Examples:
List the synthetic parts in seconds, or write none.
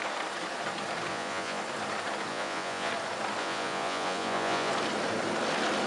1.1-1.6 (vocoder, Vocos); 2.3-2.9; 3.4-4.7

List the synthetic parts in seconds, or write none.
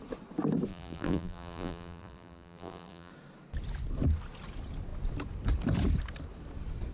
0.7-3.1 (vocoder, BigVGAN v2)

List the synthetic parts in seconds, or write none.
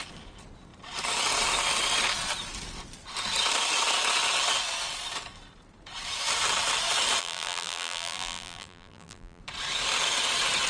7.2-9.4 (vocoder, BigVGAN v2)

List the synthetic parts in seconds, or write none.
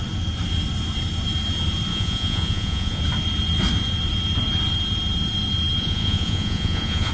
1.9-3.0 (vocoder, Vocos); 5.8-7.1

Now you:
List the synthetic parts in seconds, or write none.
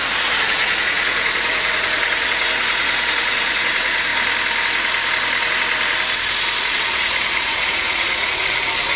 0.0-4.1 (vocoder, Vocos); 6.6-9.0